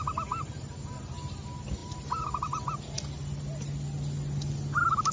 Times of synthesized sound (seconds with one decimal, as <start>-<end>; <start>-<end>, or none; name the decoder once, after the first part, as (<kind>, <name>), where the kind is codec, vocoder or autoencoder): none